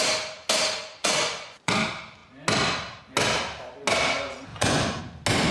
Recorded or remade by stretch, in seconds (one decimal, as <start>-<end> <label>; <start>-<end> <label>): 0.0-1.0 recorded; 1.0-1.7 remade; 1.7-4.5 recorded; 4.5-5.0 remade; 5.0-5.5 recorded